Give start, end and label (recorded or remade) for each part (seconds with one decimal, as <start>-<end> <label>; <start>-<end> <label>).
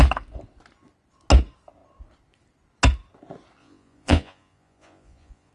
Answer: 0.0-3.6 recorded; 3.6-5.5 remade